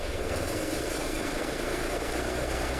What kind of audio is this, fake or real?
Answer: fake